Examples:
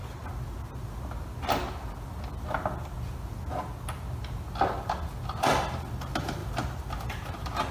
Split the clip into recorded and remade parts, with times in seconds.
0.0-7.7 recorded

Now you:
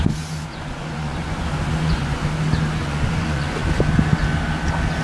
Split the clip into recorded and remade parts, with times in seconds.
0.0-0.5 recorded; 0.5-2.3 remade; 2.3-2.8 recorded; 2.8-3.8 remade; 3.8-5.0 recorded

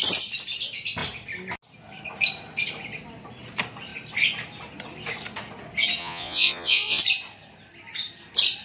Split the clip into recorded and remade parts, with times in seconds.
0.0-6.0 recorded; 6.0-7.0 remade; 7.0-8.6 recorded

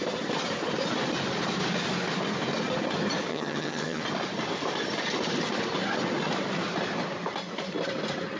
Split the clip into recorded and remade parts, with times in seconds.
0.0-3.3 recorded; 3.3-4.0 remade; 4.0-8.4 recorded

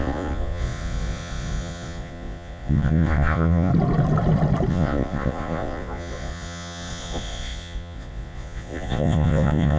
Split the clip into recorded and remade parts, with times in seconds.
0.0-3.7 remade; 3.7-4.7 recorded; 4.7-9.8 remade